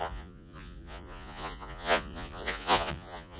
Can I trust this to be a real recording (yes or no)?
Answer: no